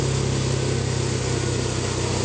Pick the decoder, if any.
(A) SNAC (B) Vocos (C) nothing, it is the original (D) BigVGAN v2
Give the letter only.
C